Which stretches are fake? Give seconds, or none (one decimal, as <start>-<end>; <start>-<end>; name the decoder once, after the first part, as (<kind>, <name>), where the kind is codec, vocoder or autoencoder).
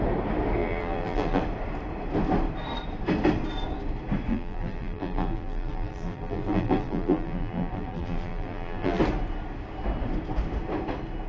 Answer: 0.6-1.4 (vocoder, BigVGAN v2); 4.3-9.0